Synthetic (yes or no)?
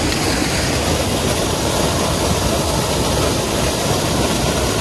no